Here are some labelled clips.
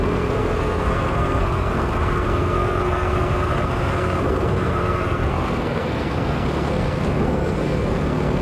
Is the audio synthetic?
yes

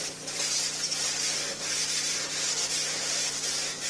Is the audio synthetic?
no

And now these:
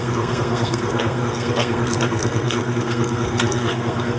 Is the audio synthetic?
yes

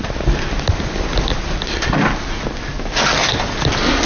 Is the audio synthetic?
no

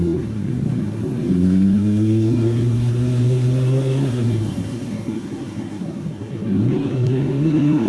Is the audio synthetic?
yes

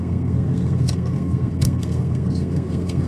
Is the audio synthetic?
yes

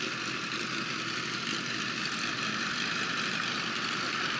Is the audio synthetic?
no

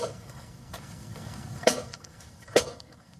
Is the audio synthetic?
yes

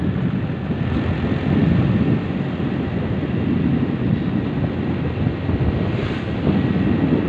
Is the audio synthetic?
no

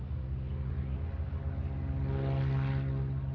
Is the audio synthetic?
no